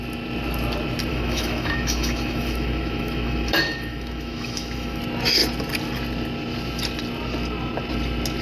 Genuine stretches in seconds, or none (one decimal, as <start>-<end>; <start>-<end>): 0.0-1.1; 5.0-8.4